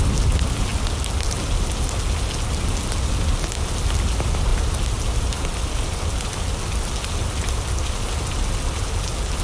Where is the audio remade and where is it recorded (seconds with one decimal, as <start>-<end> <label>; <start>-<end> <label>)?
0.0-9.4 recorded